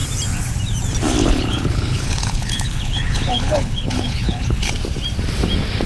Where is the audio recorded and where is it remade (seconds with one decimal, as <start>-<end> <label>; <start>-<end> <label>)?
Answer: 0.0-1.2 recorded; 1.2-4.7 remade; 4.7-5.9 recorded